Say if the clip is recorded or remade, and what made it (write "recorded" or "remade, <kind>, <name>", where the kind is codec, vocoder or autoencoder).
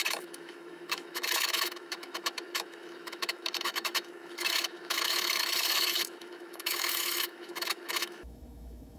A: remade, autoencoder, DAC-VAE